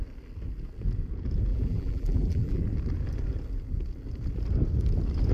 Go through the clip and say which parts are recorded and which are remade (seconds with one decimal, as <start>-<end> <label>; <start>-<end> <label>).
0.0-1.5 recorded; 1.5-2.6 remade; 2.6-5.3 recorded